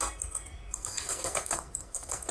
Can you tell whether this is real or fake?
fake